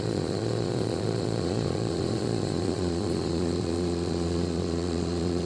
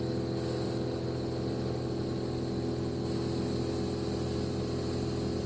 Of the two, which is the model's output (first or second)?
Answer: first